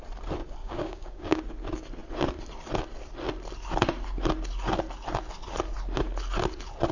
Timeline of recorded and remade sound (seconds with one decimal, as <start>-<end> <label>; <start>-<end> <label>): 0.0-0.6 recorded; 0.6-1.4 remade; 1.4-6.9 recorded